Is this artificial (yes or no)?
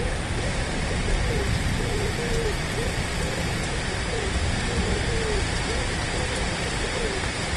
yes